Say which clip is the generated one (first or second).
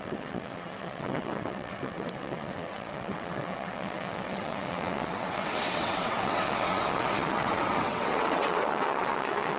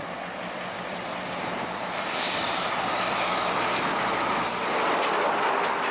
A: first